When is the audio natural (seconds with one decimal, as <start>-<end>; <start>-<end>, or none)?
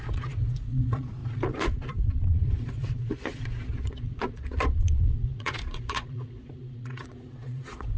none